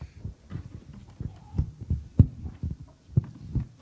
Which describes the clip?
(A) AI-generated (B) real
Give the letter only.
B